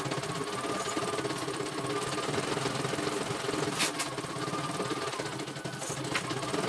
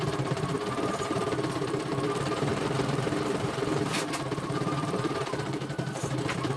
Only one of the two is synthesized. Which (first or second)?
second